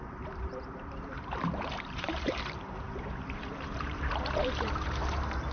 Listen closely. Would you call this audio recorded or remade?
remade